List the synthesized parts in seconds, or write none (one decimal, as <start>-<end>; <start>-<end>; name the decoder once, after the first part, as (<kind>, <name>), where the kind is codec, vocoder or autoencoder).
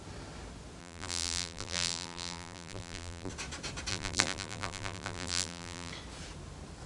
0.8-3.3 (vocoder, BigVGAN v2); 3.9-5.9